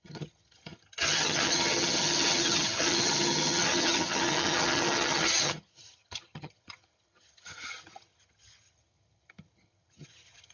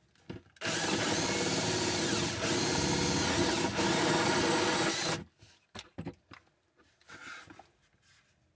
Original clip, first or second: second